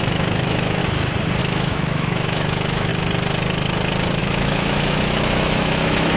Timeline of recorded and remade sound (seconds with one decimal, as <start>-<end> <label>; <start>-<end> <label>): 0.0-0.8 remade; 0.8-1.4 recorded; 1.4-2.9 remade; 2.9-4.2 recorded; 4.2-6.2 remade